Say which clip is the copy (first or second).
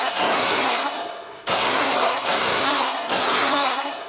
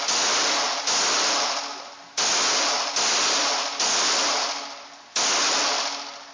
first